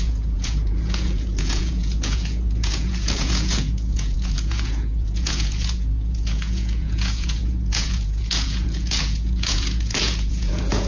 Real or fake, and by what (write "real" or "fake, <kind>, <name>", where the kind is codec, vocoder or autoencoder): fake, vocoder, Vocos